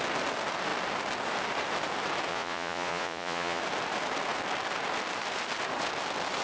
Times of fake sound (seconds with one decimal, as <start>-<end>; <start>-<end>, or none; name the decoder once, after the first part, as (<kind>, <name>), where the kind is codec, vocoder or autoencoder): 2.3-3.6 (vocoder, Vocos)